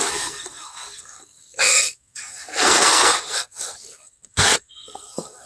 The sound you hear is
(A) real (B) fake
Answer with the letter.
B